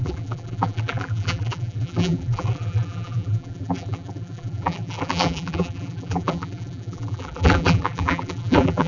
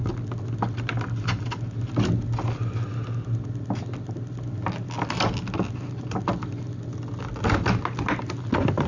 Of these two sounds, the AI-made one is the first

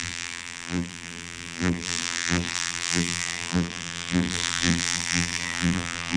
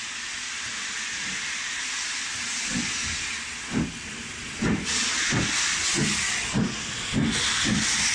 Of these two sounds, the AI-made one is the first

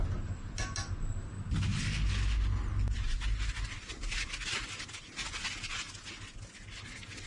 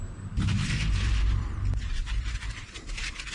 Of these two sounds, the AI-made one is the second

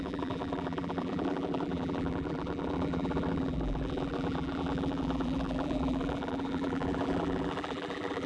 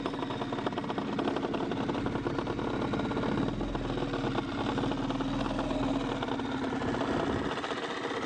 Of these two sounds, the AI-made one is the first